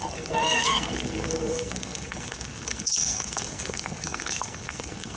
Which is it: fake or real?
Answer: fake